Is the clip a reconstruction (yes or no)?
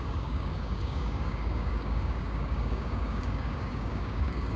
yes